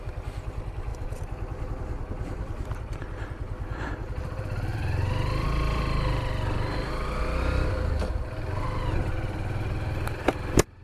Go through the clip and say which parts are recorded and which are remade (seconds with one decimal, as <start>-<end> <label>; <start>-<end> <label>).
0.0-0.9 recorded; 0.9-5.8 remade; 5.8-10.8 recorded